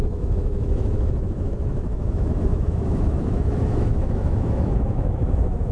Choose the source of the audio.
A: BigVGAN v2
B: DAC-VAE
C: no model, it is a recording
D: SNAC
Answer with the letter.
B